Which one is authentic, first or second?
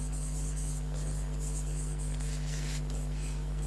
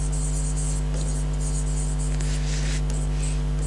second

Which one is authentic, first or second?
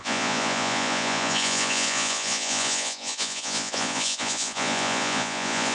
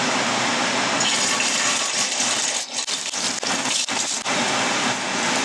second